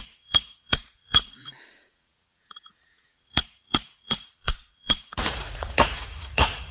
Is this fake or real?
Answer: fake